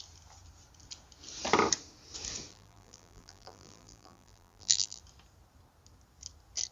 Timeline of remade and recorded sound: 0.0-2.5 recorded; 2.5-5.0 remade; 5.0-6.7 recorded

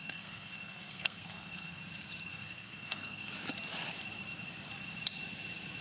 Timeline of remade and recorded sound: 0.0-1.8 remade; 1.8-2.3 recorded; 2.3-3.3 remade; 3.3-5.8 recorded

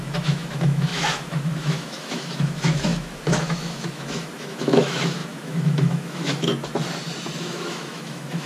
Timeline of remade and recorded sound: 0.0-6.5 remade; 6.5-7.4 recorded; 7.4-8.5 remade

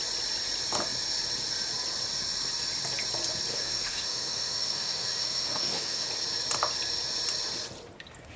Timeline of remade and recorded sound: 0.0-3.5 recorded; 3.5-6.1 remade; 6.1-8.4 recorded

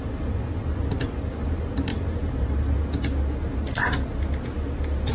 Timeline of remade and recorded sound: 0.0-1.9 recorded; 1.9-2.8 remade; 2.8-5.1 recorded

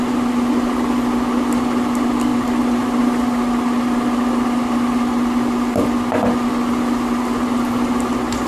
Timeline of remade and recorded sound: 0.0-8.5 recorded

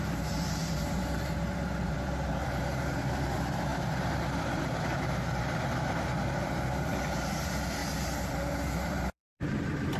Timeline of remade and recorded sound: 0.0-10.0 remade